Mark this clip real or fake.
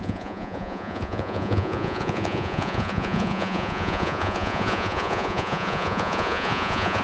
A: fake